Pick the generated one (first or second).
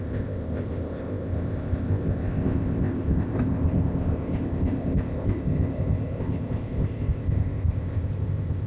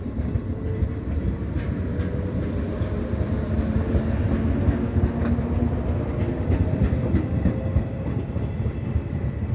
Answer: first